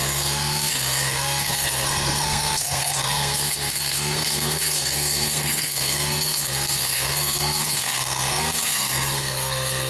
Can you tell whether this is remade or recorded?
remade